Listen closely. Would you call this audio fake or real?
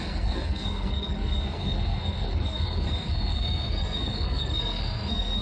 fake